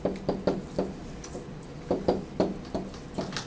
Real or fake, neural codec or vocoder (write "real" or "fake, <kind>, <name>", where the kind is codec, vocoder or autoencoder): real